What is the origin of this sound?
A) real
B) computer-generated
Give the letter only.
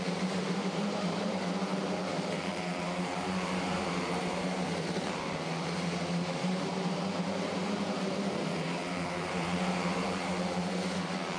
B